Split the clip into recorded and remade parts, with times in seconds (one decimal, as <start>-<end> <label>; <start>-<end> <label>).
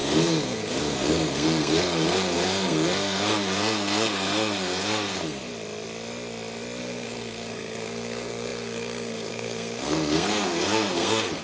0.0-5.5 remade; 5.5-6.8 recorded; 6.8-11.4 remade